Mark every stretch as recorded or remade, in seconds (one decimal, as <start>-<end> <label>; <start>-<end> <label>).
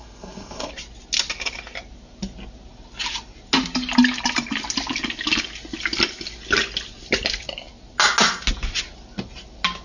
0.0-0.7 remade; 0.7-9.8 recorded